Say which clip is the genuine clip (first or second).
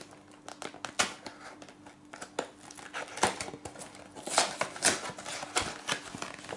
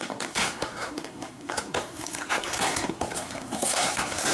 first